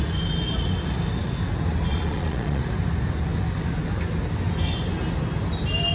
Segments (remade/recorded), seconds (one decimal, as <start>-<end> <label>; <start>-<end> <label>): 0.0-1.9 recorded; 1.9-2.6 remade; 2.6-5.9 recorded